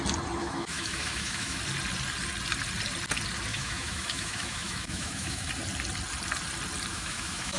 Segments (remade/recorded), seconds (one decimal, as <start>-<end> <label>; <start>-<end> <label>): 0.0-0.4 recorded; 0.4-1.6 remade; 1.6-3.5 recorded; 3.5-5.5 remade; 5.5-6.9 recorded; 6.9-7.6 remade